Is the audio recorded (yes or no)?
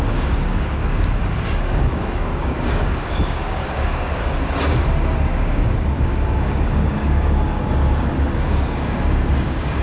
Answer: no